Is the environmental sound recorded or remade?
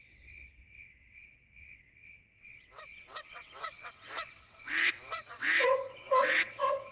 remade